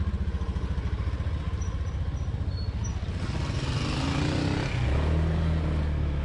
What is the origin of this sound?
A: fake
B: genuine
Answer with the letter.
B